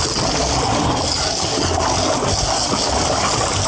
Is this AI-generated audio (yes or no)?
no